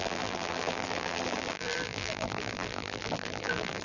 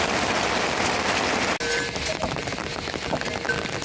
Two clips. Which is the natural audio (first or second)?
second